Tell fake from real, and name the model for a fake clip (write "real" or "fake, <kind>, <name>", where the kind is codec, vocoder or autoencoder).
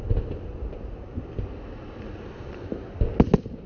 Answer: real